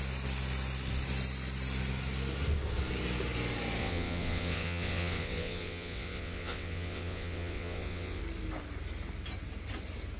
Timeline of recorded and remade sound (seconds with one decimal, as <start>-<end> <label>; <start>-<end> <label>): 0.0-3.8 recorded; 3.8-8.2 remade; 8.2-10.2 recorded